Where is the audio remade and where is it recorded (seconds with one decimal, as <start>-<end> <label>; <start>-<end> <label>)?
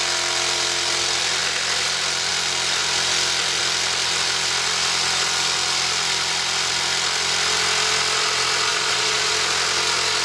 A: 0.0-8.7 recorded; 8.7-9.3 remade; 9.3-10.2 recorded